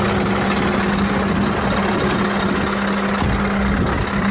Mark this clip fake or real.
real